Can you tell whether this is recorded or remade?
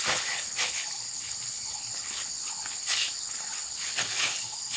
remade